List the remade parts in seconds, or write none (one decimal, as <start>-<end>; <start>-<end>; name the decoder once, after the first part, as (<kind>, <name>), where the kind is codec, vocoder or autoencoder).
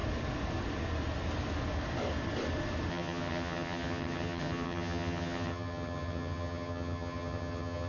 2.9-7.9 (vocoder, HiFi-GAN)